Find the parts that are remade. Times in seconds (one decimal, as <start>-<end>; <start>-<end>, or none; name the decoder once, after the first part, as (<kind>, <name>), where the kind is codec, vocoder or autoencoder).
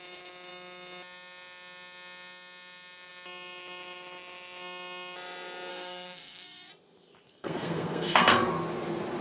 5.7-6.7 (codec, SNAC); 7.3-8.5